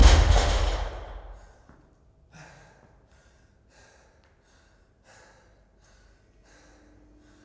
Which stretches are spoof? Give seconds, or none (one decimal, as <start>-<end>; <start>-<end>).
0.0-0.6